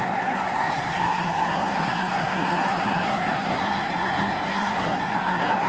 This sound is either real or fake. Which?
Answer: fake